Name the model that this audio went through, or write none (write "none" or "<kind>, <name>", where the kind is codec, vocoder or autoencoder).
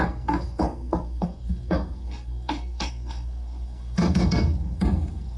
codec, SNAC